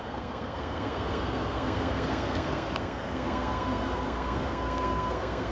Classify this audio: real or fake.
fake